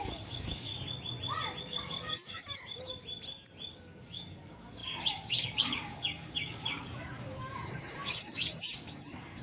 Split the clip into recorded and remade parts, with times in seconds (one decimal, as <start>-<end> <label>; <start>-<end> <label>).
0.0-0.7 remade; 0.7-1.6 recorded; 1.6-2.9 remade; 2.9-3.7 recorded; 3.7-9.4 remade